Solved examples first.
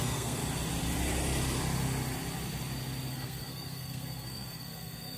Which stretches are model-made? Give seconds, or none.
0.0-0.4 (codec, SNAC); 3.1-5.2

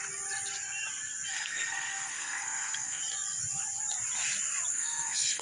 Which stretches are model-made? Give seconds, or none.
1.3-3.0 (codec, SNAC); 4.7-5.4

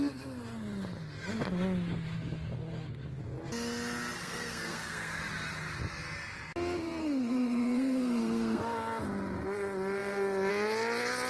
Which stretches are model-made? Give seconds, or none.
4.2-5.2 (codec, SNAC); 7.0-8.6

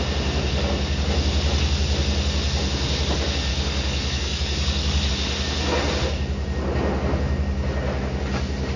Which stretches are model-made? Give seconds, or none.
3.5-5.1 (codec, DAC)